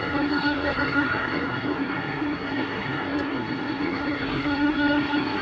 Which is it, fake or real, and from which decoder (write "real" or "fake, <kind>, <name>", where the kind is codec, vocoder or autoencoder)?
fake, codec, SNAC